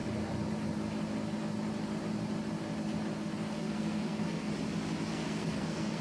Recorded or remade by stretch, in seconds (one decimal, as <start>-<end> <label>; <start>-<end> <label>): 0.0-3.6 recorded; 3.6-4.5 remade; 4.5-5.1 recorded; 5.1-6.0 remade